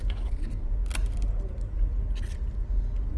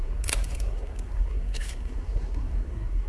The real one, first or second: first